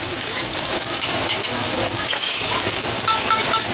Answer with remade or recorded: remade